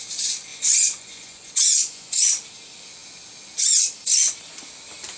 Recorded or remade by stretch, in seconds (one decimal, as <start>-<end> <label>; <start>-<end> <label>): 0.0-0.5 recorded; 0.5-2.2 remade; 2.2-5.2 recorded